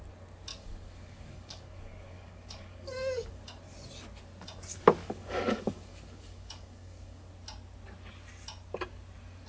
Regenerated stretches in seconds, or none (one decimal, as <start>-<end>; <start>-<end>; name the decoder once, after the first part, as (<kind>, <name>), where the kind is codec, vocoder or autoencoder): 0.5-3.4 (codec, DAC); 5.0-7.3